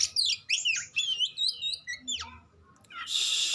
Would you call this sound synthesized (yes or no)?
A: no